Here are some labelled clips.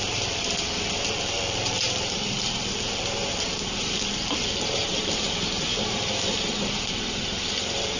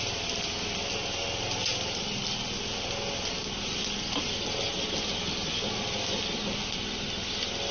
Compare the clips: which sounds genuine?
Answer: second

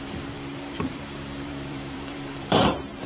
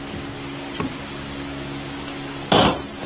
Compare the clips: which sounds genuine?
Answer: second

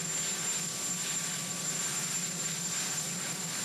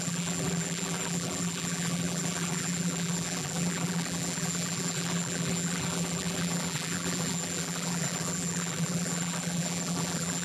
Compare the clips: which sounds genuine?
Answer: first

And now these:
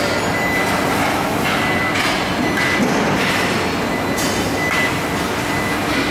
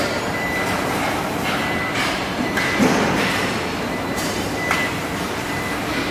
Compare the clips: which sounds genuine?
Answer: first